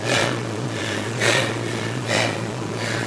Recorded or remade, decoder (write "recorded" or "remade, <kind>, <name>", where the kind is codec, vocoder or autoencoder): remade, vocoder, Vocos